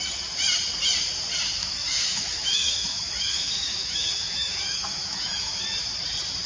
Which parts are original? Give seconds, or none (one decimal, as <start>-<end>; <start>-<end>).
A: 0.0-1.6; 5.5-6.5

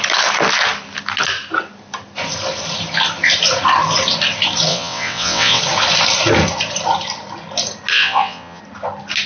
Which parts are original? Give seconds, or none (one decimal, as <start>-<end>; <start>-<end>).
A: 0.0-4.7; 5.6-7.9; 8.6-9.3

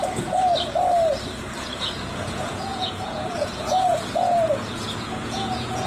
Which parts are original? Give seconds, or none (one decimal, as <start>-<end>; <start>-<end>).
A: 0.5-1.6

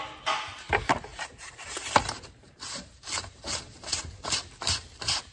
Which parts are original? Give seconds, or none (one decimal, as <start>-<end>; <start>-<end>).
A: 0.0-1.1; 4.3-5.3

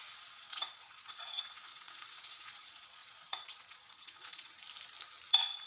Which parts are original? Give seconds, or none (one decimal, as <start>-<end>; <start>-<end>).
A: 4.5-5.3

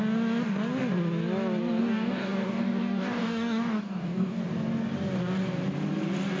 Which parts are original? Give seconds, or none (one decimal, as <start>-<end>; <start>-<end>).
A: 0.0-1.8; 4.4-6.4

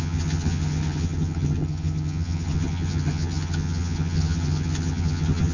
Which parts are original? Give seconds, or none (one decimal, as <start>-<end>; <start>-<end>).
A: none

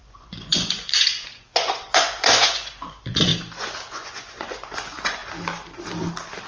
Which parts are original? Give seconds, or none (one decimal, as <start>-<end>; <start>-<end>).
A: 3.3-3.9; 5.2-6.5